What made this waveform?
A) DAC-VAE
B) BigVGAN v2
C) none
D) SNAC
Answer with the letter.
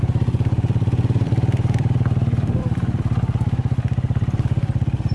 B